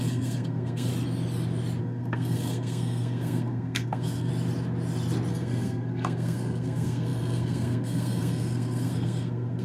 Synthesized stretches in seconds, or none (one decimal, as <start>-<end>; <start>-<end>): 0.0-0.9; 1.8-4.3; 5.3-9.6